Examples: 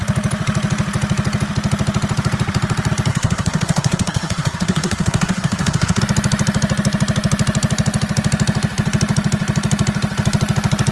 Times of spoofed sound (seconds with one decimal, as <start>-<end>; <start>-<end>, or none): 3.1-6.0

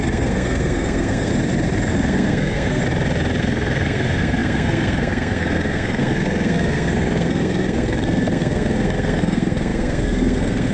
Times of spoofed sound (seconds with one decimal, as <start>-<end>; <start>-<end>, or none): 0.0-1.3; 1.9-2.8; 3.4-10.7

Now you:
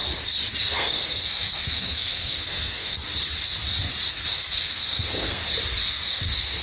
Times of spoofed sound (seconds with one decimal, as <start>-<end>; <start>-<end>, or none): 0.6-3.0; 4.1-5.4; 6.1-6.6

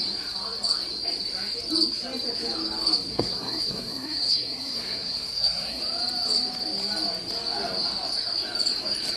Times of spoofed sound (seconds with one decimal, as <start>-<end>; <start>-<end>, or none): 3.1-5.8